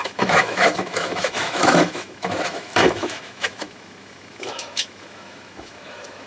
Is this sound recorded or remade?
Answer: remade